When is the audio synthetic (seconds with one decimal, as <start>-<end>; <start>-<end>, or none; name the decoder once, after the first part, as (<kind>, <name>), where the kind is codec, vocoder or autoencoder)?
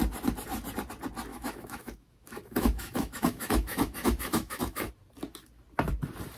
1.3-4.9 (autoencoder, DAC-VAE)